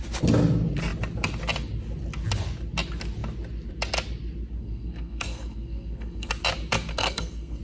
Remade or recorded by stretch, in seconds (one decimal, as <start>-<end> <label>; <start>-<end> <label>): 0.0-4.6 recorded; 4.6-6.3 remade; 6.3-6.9 recorded; 6.9-7.6 remade